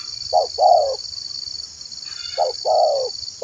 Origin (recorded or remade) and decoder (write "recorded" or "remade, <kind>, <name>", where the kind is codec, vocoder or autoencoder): recorded